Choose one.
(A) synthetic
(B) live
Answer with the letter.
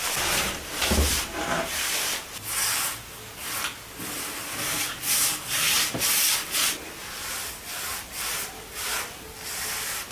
B